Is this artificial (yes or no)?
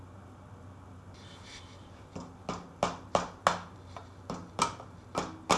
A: no